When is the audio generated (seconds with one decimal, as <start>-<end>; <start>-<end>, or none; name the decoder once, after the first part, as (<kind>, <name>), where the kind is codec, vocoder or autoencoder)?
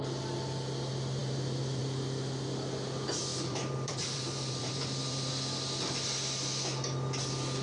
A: 1.2-1.8 (vocoder, BigVGAN v2); 3.3-5.3